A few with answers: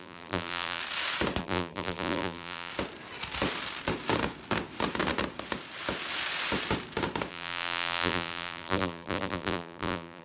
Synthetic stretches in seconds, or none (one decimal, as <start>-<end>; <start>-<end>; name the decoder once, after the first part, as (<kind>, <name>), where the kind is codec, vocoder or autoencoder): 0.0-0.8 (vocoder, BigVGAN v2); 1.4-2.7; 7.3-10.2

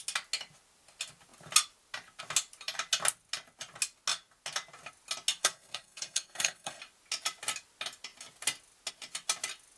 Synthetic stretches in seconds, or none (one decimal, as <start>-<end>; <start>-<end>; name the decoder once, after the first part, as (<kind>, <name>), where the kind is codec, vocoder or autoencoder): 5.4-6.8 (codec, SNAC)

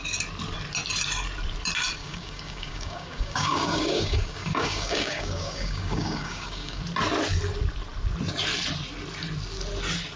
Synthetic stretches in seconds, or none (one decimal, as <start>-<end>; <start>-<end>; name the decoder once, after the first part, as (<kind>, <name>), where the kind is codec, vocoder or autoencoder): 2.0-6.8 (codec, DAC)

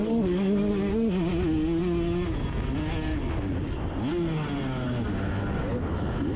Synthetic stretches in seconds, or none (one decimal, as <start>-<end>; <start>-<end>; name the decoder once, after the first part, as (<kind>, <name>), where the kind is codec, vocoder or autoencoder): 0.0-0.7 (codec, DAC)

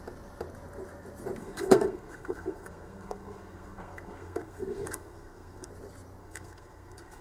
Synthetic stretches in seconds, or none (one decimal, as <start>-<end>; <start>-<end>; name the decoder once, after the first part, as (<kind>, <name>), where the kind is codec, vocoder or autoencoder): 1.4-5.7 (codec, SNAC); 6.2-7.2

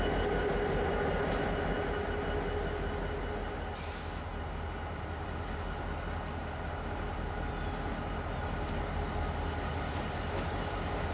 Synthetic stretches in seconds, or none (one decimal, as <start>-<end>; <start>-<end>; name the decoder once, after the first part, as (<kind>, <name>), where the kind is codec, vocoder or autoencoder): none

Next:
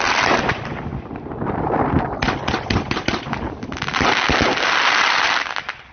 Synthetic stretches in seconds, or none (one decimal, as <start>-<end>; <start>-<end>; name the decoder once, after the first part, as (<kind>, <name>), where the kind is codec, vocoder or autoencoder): none

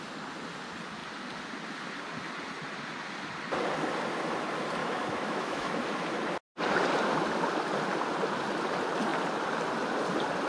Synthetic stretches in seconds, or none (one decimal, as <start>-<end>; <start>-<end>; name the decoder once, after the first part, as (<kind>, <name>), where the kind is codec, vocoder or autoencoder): 4.8-5.8 (autoencoder, DAC-VAE)